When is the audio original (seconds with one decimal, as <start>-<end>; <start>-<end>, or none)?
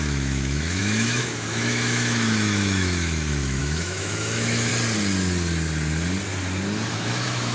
4.7-6.9